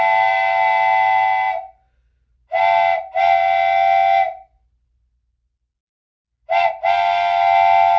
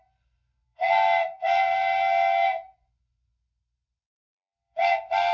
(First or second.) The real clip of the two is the first